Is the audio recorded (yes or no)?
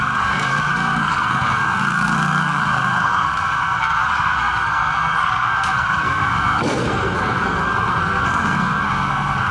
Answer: no